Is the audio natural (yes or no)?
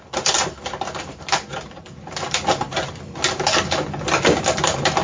yes